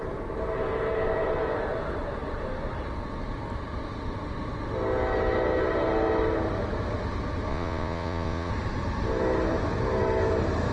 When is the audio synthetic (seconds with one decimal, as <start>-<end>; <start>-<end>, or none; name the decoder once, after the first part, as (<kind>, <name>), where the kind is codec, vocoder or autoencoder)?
7.5-8.5 (vocoder, Vocos)